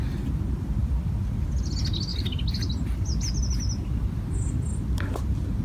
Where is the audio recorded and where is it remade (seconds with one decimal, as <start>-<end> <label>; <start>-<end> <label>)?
0.0-5.6 recorded